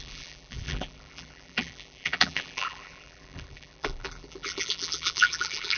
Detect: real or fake fake